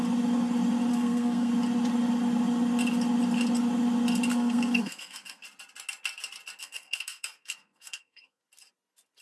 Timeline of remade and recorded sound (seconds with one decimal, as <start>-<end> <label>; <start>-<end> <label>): 0.0-0.9 recorded; 0.9-1.5 remade; 1.5-4.3 recorded; 4.3-5.4 remade; 5.4-6.6 recorded; 6.6-8.4 remade; 8.4-9.2 recorded